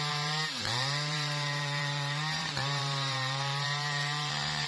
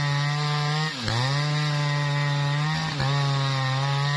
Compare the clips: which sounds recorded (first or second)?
second